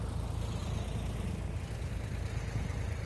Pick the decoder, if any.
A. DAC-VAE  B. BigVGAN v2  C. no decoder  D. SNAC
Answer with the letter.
C